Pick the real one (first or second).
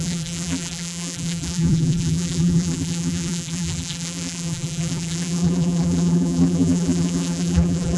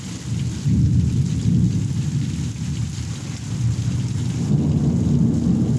second